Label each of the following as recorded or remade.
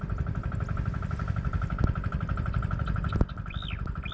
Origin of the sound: recorded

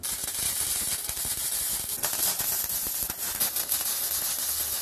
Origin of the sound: recorded